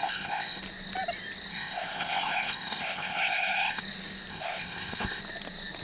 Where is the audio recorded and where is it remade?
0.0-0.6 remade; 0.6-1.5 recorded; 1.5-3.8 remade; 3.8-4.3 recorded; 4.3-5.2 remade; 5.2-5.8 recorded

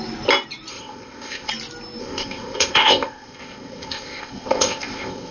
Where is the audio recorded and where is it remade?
0.0-0.7 recorded; 0.7-1.5 remade; 1.5-2.0 recorded; 2.0-5.3 remade

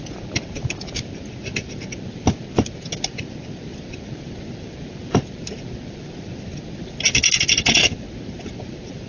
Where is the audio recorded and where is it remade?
0.0-9.1 recorded